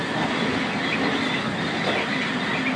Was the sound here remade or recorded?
recorded